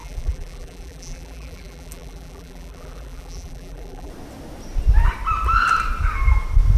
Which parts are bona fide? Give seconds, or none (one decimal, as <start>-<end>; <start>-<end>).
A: 4.1-6.8

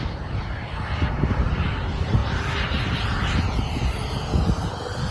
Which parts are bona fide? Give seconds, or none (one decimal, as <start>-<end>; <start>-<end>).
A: 0.0-1.1; 2.2-4.1

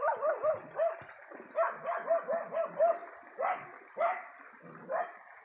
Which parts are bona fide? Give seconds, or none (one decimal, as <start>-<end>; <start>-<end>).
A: 0.0-3.0; 5.0-5.4

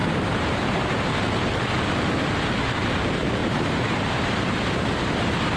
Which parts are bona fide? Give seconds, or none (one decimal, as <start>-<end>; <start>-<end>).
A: 1.1-3.4